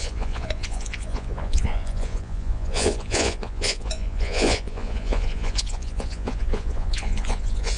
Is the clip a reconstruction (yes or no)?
yes